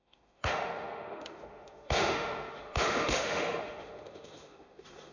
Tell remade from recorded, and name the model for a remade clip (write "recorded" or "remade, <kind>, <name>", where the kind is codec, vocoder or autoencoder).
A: remade, autoencoder, DAC-VAE